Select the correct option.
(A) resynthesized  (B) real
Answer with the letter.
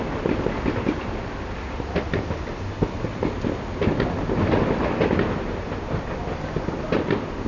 B